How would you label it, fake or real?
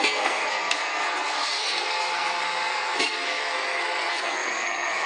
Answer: fake